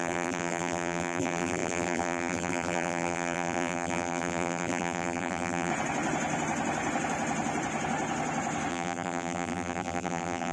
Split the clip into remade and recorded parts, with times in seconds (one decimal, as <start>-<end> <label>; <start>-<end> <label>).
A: 0.0-5.7 remade; 5.7-8.7 recorded; 8.7-10.5 remade